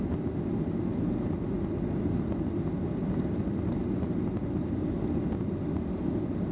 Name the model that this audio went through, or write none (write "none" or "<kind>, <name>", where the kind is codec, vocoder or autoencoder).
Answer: none